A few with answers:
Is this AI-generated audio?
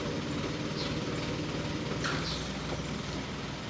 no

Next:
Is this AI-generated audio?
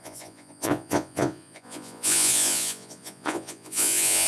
yes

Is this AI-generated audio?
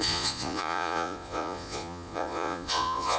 yes